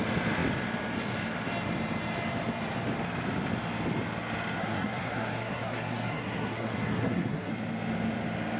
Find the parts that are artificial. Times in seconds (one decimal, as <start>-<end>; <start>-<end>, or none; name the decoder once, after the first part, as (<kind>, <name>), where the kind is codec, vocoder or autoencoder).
4.6-7.5 (codec, SNAC)